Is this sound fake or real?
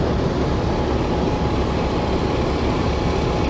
real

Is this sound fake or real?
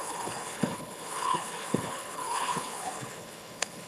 fake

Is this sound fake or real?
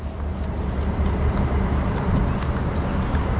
real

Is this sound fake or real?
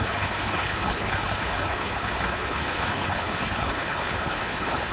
fake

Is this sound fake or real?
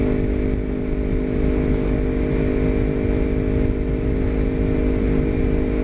real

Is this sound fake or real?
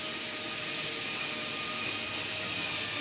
real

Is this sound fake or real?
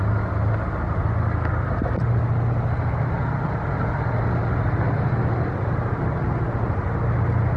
real